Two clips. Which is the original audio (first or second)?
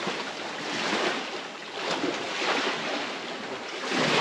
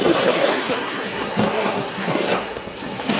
first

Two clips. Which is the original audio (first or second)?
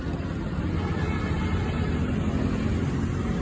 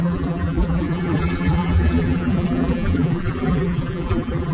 first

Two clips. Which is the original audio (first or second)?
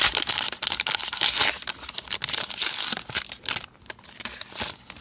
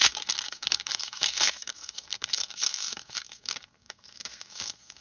first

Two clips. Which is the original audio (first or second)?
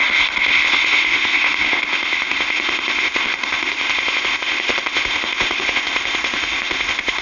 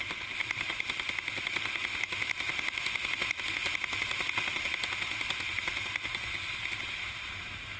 second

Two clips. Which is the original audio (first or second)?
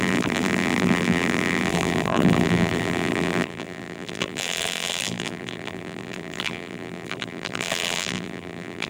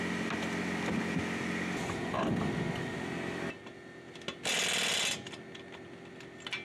second